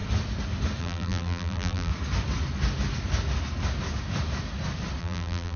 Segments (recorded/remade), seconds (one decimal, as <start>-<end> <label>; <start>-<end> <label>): 0.0-0.8 recorded; 0.8-1.9 remade; 1.9-5.0 recorded; 5.0-5.6 remade